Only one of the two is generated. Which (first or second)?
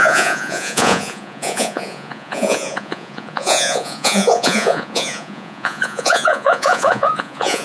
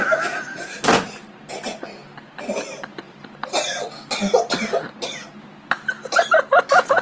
first